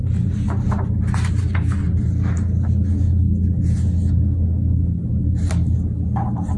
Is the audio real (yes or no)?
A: yes